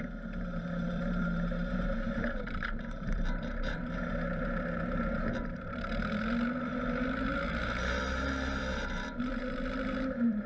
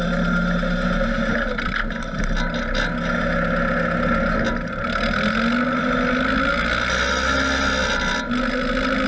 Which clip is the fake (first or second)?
first